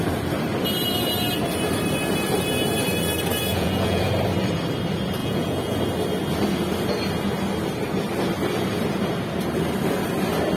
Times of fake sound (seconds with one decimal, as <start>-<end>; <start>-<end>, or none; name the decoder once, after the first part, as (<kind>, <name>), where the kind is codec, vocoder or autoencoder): 3.4-4.1 (vocoder, Vocos); 5.2-5.8